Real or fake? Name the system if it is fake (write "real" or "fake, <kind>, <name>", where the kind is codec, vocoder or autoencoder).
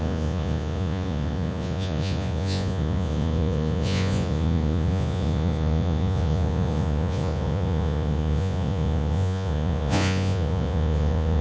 fake, vocoder, Vocos